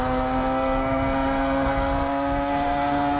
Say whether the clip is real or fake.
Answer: fake